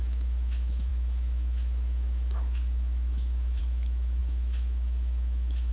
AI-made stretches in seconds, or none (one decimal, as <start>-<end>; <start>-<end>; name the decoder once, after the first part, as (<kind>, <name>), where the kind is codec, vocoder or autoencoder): 0.0-5.7 (autoencoder, DAC-VAE)